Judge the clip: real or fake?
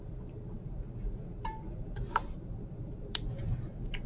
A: fake